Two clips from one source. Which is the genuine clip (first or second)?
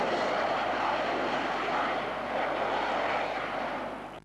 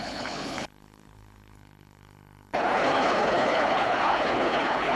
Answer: first